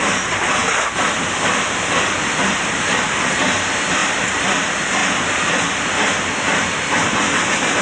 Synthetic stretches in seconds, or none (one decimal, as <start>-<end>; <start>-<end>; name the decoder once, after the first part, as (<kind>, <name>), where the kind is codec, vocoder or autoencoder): 0.0-0.6 (vocoder, BigVGAN v2); 2.2-7.8